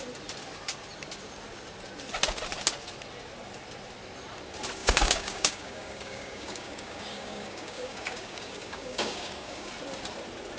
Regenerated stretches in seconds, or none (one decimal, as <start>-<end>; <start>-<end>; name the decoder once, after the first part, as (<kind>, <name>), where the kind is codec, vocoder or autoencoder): 4.8-9.7 (codec, DAC)